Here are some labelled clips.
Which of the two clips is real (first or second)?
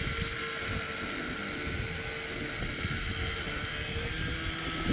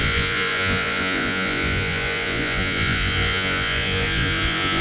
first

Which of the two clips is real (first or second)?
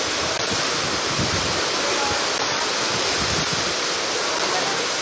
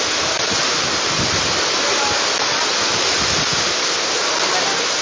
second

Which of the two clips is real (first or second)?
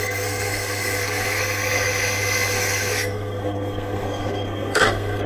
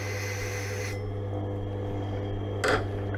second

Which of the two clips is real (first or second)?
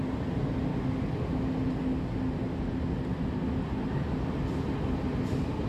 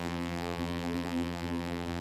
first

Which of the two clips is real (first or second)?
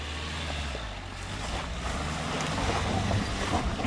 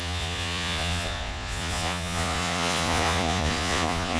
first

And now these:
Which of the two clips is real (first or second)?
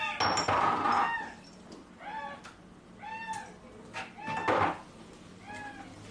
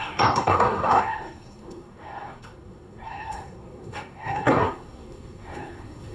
first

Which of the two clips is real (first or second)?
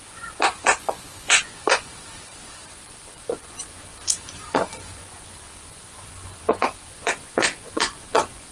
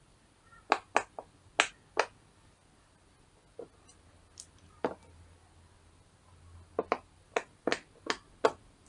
second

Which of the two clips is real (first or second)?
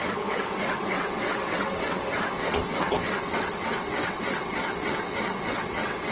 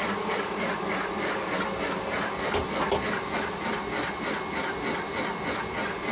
second